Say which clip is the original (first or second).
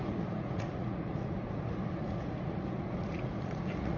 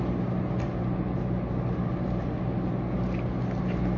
second